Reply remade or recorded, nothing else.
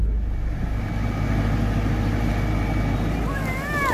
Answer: recorded